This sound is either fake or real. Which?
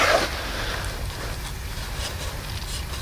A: real